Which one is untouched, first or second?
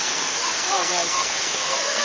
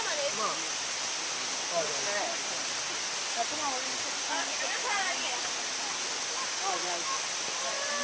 second